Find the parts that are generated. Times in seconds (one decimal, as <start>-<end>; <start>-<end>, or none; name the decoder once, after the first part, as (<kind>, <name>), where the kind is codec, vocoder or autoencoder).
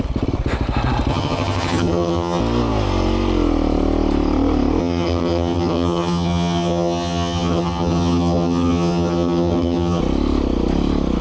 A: 1.1-2.4 (vocoder, HiFi-GAN); 4.8-10.0